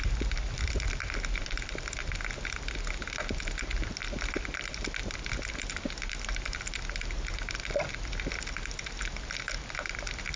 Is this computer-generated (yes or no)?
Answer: no